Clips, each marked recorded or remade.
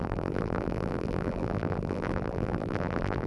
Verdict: remade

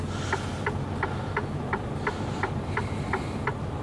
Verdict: recorded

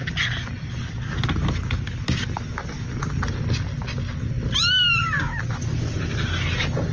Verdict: recorded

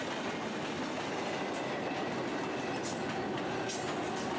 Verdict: recorded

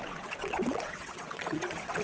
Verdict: remade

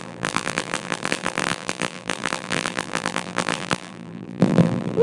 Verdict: remade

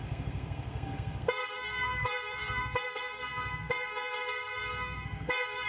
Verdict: remade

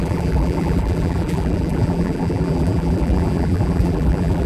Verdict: remade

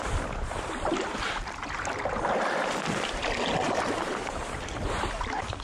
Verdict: remade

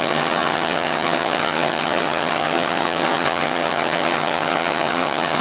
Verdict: remade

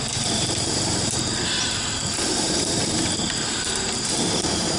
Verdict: remade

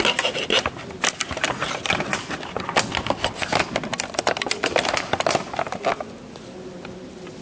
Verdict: recorded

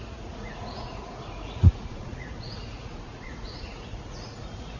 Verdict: remade